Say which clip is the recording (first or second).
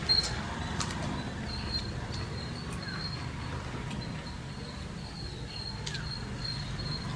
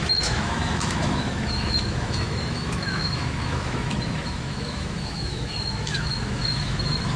first